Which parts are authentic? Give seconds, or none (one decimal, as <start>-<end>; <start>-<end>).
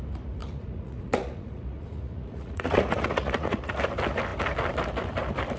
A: 0.0-0.4; 3.8-5.6